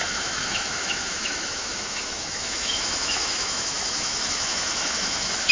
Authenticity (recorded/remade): remade